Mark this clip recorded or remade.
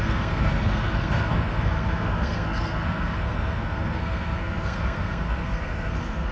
remade